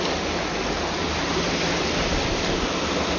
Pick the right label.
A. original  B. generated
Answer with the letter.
A